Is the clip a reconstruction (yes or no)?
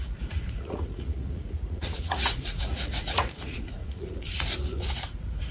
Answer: yes